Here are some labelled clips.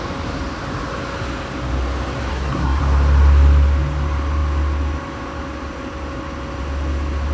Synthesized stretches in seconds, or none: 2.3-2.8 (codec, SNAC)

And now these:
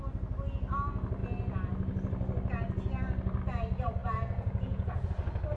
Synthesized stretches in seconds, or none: 4.0-5.1 (vocoder, Vocos)

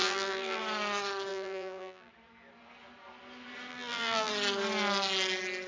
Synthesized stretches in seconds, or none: 0.0-0.6 (vocoder, BigVGAN v2); 1.3-2.1; 3.7-4.3

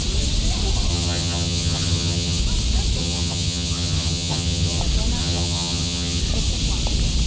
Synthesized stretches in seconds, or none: 0.9-2.4 (vocoder, HiFi-GAN); 3.0-4.8; 5.2-6.2

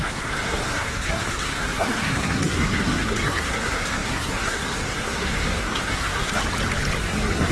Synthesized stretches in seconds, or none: 0.0-6.4 (codec, SNAC); 7.0-7.5

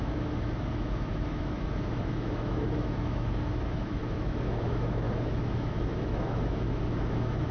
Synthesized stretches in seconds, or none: 0.0-7.5 (autoencoder, DAC-VAE)

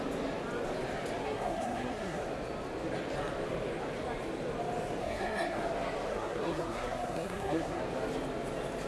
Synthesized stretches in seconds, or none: 1.2-2.2 (codec, SNAC); 5.0-5.6; 6.1-7.8

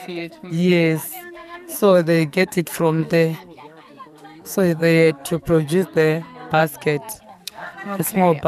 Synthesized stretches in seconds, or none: 0.0-6.6 (codec, SNAC); 7.2-8.5